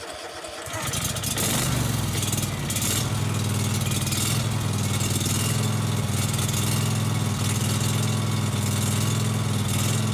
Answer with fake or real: real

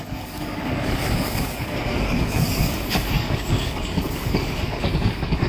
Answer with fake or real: fake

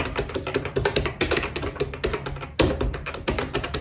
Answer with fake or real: real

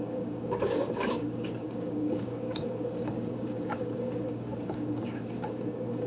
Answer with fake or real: fake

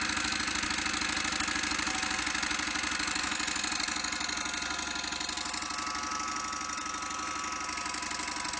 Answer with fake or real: real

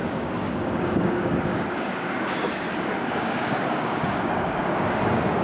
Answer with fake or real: fake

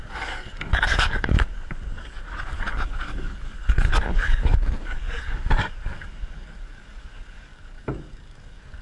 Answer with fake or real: fake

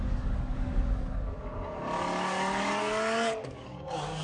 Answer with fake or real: fake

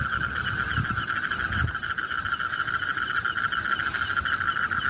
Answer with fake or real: real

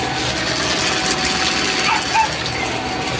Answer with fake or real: real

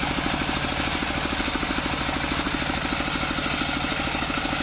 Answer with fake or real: real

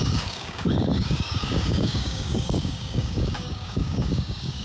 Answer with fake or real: fake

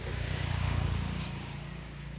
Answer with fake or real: fake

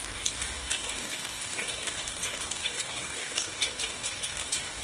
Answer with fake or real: fake